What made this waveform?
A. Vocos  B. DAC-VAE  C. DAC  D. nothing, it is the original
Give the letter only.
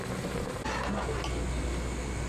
D